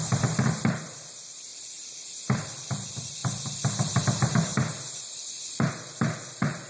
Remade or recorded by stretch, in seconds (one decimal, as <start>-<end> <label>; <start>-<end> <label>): 0.0-4.5 remade; 4.5-5.5 recorded; 5.5-6.7 remade